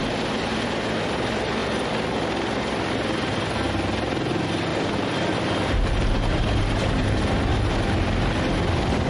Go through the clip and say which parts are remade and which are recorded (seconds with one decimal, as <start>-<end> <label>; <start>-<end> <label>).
0.0-4.7 recorded; 4.7-7.2 remade; 7.2-9.1 recorded